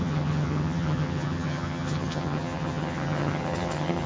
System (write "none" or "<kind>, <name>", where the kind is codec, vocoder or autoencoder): vocoder, HiFi-GAN